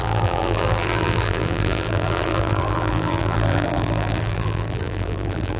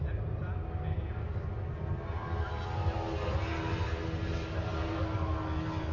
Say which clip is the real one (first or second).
second